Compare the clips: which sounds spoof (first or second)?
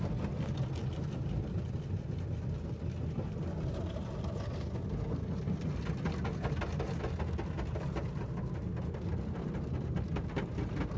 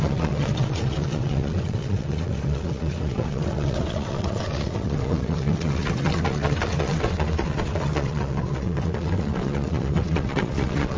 second